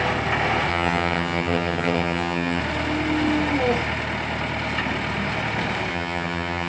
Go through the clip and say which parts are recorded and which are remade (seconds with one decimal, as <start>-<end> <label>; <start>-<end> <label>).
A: 0.0-0.7 recorded; 0.7-2.6 remade; 2.6-5.9 recorded; 5.9-6.7 remade